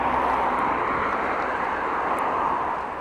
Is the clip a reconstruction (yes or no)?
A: no